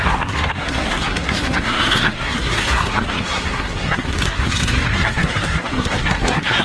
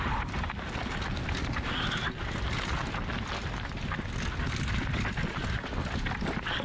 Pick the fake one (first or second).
first